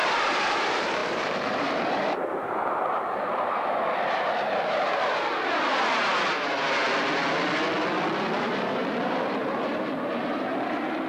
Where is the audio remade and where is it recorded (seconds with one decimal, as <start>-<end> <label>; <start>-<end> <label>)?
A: 0.0-6.0 remade; 6.0-8.2 recorded; 8.2-11.1 remade